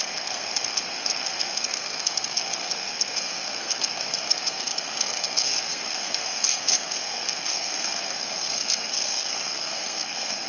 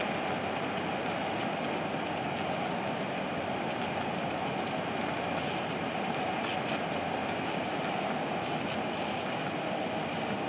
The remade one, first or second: first